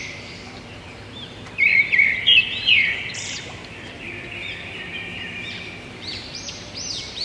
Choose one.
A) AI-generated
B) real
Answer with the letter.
A